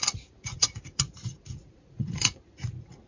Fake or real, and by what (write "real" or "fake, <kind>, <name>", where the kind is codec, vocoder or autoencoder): fake, vocoder, Vocos